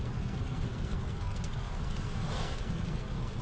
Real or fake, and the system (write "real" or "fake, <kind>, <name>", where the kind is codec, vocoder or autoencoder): fake, codec, SNAC